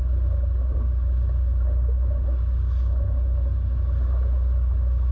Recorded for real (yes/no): yes